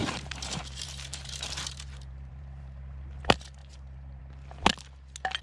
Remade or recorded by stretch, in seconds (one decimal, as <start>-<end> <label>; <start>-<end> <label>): 0.0-3.2 remade; 3.2-3.6 recorded; 3.6-4.2 remade; 4.2-5.4 recorded